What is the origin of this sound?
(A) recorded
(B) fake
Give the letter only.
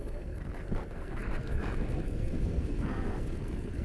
B